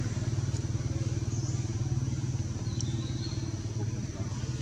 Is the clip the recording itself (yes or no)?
yes